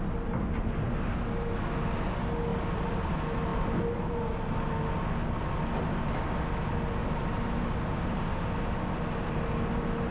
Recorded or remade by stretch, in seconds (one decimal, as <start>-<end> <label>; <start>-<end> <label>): 0.0-2.5 recorded; 2.5-3.1 remade; 3.1-10.1 recorded